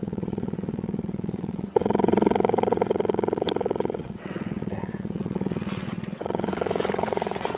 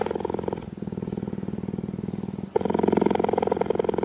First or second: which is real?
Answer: second